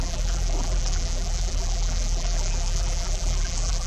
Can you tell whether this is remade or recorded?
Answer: remade